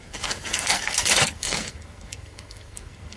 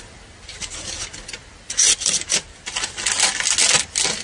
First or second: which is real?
second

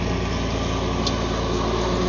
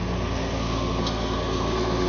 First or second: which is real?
first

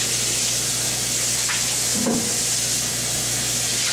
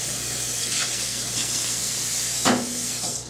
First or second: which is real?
first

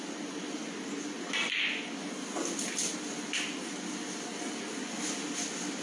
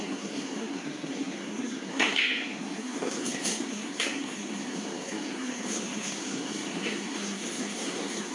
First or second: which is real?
first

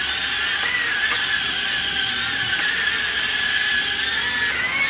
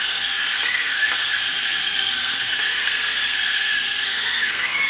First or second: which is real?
first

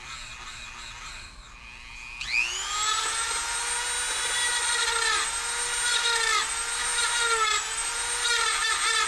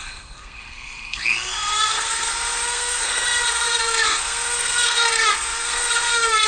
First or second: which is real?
first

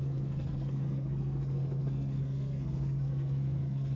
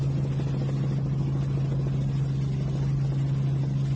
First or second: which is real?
second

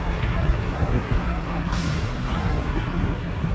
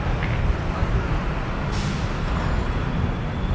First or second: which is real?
second